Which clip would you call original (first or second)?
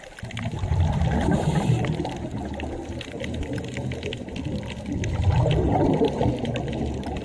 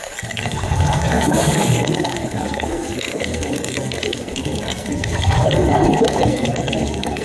first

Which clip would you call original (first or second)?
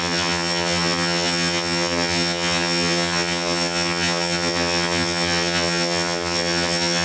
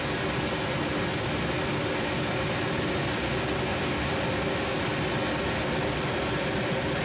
second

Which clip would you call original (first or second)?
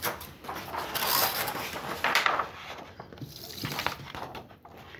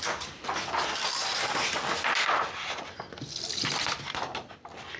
second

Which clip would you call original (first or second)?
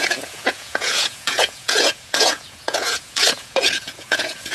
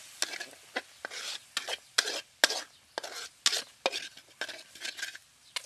second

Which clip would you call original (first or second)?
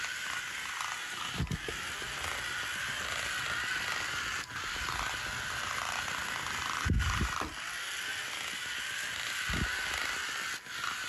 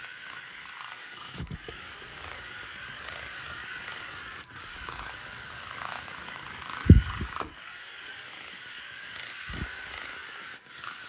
first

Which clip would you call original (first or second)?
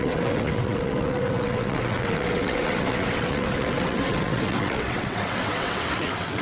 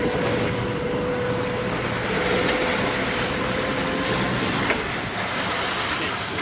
second